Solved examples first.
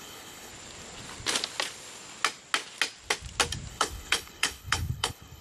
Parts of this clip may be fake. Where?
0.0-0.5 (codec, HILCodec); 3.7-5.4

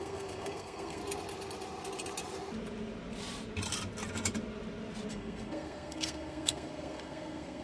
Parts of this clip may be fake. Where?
0.0-1.0 (codec, SNAC); 5.1-7.6

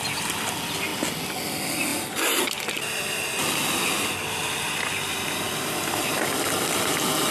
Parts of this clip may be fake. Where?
none

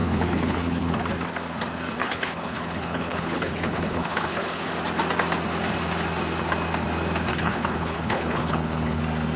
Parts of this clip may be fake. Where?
0.0-0.9 (codec, HILCodec); 2.0-4.7; 7.3-9.0

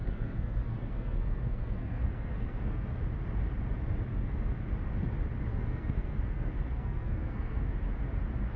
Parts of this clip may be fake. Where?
0.0-3.0 (codec, SNAC); 4.1-4.6; 5.5-7.7